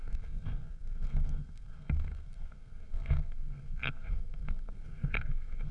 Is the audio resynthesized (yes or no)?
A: yes